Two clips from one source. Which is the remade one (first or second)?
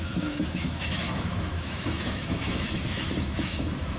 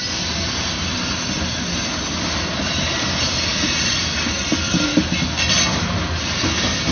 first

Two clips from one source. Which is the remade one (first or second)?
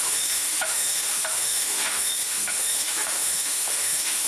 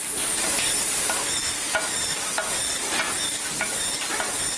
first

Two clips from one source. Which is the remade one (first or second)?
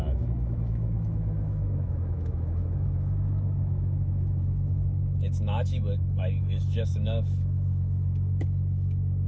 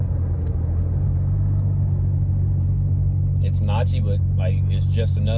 first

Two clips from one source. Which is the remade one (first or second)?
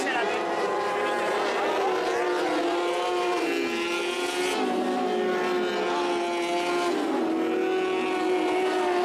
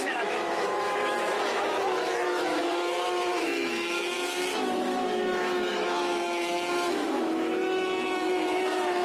second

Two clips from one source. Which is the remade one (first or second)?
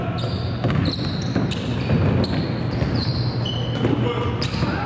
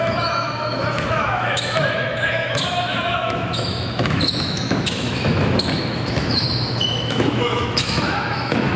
second